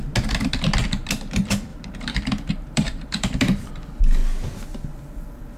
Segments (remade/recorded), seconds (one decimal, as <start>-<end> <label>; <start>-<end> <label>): 0.0-1.7 recorded; 1.7-3.7 remade; 3.7-5.6 recorded